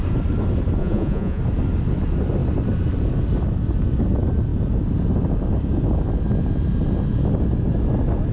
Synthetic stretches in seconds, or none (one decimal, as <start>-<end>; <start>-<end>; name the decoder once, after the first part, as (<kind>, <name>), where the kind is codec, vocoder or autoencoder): 0.8-1.4 (vocoder, Vocos)